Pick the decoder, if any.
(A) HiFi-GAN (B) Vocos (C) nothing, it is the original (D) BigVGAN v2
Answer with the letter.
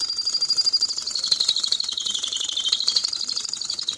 D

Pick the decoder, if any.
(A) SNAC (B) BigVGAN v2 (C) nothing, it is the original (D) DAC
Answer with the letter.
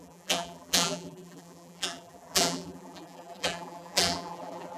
B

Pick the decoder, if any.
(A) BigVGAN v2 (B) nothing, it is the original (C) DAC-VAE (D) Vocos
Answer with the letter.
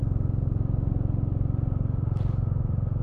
B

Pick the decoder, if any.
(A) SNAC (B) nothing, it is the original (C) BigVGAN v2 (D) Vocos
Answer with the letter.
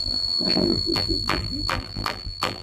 C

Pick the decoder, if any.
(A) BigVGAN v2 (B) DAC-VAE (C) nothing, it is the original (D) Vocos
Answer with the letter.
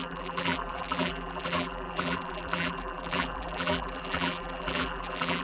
A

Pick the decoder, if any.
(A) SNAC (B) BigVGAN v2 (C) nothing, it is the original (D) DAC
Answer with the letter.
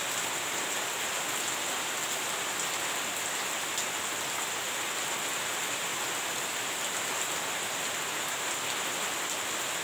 C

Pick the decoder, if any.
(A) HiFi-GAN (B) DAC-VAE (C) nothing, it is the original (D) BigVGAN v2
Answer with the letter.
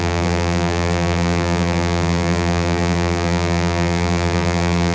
D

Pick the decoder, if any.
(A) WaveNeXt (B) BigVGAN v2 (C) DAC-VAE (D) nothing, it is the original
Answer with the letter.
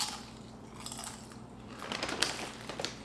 B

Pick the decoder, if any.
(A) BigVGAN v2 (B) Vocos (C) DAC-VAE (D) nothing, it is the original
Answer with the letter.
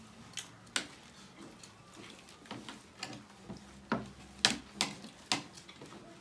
D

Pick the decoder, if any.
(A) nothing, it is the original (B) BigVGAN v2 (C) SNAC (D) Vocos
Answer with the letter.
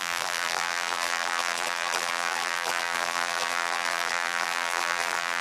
B